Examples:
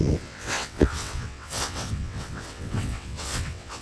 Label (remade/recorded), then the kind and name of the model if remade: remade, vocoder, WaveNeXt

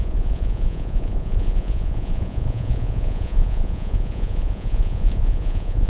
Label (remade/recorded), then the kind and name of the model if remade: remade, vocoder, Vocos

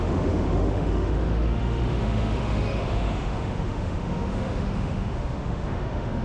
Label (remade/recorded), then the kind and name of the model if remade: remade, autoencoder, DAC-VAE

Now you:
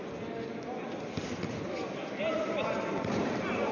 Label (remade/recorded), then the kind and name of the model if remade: recorded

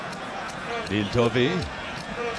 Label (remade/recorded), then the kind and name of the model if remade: remade, vocoder, Vocos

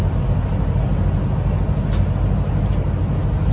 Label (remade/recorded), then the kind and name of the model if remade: recorded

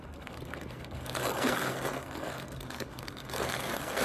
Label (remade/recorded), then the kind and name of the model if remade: remade, codec, SNAC